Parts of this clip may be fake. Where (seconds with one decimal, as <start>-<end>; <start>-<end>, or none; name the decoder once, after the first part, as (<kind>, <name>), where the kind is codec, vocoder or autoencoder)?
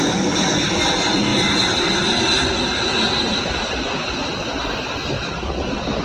none